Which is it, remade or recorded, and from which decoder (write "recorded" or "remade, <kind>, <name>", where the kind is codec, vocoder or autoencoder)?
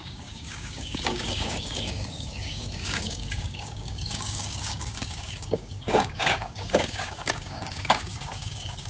remade, codec, DAC